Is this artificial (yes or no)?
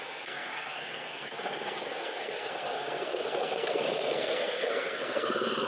yes